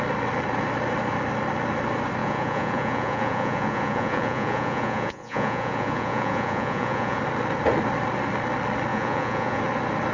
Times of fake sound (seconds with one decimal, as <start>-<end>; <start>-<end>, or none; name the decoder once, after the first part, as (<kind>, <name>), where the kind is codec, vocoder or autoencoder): 2.2-7.2 (vocoder, Vocos); 8.9-9.6